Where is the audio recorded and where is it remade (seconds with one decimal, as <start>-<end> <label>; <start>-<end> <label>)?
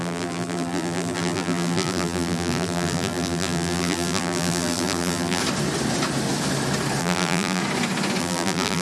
0.0-5.4 remade; 5.4-7.0 recorded; 7.0-7.6 remade; 7.6-8.2 recorded; 8.2-8.8 remade